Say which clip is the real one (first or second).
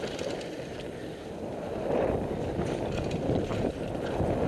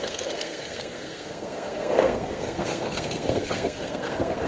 first